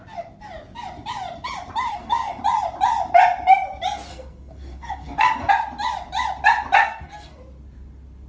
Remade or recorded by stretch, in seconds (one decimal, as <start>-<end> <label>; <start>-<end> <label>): 0.0-1.9 recorded; 1.9-2.4 remade; 2.4-4.1 recorded; 4.1-5.5 remade; 5.5-6.8 recorded; 6.8-7.4 remade; 7.4-8.3 recorded